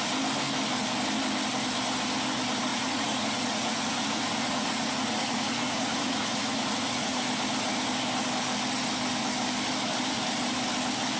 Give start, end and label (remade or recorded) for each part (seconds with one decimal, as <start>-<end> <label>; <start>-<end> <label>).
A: 0.0-2.7 recorded; 2.7-7.2 remade; 7.2-11.2 recorded